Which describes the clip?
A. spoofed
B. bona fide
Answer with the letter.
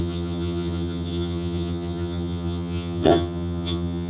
A